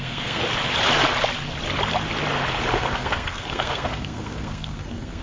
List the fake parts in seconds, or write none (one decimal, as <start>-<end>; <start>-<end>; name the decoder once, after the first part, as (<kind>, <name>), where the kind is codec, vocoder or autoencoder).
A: 0.0-0.4 (codec, SNAC); 2.7-5.2